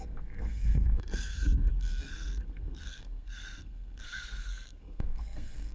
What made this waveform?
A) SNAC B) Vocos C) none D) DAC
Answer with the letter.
A